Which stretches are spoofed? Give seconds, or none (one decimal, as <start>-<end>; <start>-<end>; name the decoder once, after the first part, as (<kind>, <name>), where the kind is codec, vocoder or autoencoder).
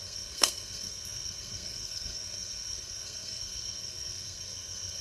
0.0-5.0 (codec, SNAC)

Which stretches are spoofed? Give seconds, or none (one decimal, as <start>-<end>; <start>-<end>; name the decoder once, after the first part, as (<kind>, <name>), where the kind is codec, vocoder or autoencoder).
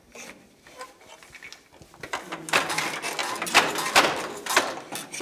none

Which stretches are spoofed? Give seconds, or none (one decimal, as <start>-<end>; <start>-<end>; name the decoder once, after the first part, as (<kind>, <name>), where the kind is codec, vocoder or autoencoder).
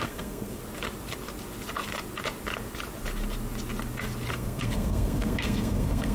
0.0-0.6 (codec, SNAC); 4.3-6.1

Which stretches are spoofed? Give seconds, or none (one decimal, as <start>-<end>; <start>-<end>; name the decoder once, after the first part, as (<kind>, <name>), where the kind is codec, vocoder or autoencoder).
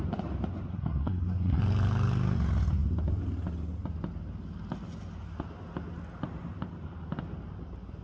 0.7-1.6 (codec, SNAC)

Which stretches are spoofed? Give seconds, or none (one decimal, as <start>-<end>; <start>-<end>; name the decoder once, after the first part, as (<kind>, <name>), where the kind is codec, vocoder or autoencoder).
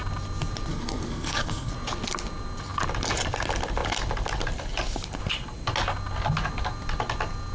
0.7-1.7 (codec, SNAC)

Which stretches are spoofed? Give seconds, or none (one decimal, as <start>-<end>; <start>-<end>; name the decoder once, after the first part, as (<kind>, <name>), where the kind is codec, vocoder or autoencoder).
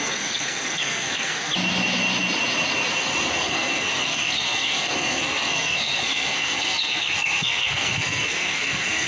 0.0-1.5 (codec, SNAC); 3.4-9.1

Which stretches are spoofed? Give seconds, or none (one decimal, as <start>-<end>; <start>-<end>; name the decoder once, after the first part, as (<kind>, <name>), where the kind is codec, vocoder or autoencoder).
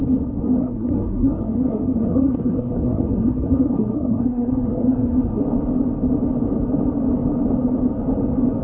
0.6-5.4 (codec, SNAC)